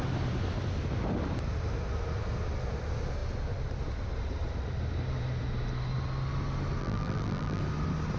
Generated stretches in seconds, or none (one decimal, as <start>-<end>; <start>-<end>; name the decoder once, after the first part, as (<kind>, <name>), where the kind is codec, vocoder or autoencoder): 6.8-7.6 (vocoder, BigVGAN v2)